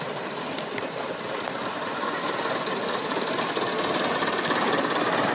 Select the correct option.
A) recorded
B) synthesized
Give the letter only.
A